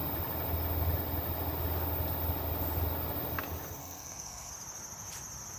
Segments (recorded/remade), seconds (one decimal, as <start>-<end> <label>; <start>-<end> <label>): 0.0-3.8 recorded; 3.8-4.5 remade; 4.5-5.6 recorded